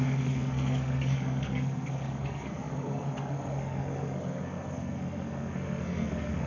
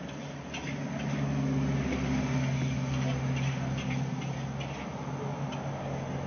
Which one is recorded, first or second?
second